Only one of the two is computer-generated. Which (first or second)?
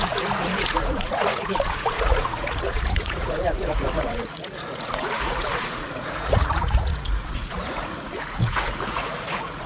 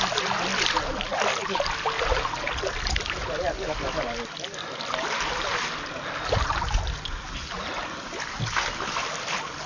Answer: first